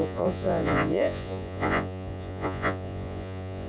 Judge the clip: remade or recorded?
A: remade